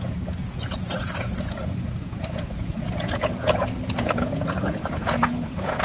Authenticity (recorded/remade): remade